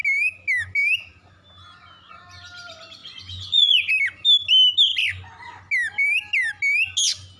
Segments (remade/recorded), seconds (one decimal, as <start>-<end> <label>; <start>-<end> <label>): 0.0-3.0 recorded; 3.0-3.9 remade; 3.9-7.4 recorded